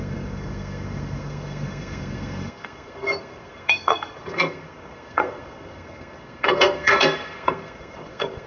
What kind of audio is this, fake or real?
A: fake